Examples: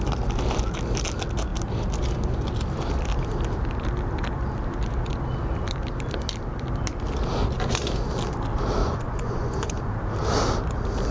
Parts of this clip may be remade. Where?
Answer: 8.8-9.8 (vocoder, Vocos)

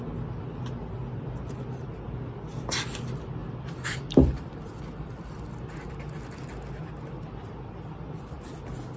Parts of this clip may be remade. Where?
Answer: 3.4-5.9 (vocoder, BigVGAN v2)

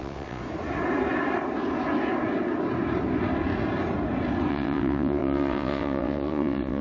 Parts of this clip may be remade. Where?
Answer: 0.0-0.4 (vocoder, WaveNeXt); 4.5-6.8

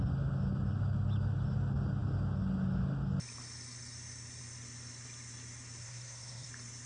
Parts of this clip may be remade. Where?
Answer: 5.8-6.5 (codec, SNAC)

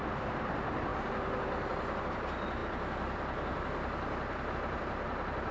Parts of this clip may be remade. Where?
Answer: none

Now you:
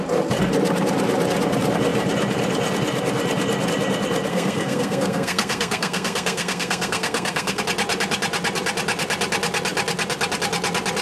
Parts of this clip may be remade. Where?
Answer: 4.3-7.6 (codec, SNAC)

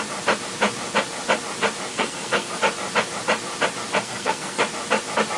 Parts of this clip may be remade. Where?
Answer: 1.9-2.6 (codec, SNAC); 4.0-4.6

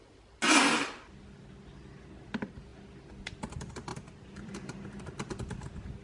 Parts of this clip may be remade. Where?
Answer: 2.7-3.3 (vocoder, BigVGAN v2); 3.9-5.0